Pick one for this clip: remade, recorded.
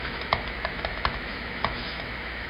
remade